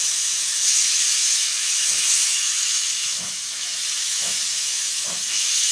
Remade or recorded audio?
remade